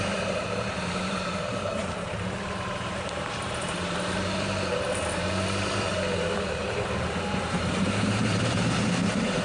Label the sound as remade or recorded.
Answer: remade